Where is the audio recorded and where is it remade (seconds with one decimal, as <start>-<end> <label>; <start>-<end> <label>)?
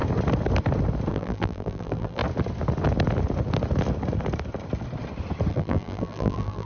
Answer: 0.0-1.1 recorded; 1.1-2.2 remade; 2.2-5.5 recorded; 5.5-6.7 remade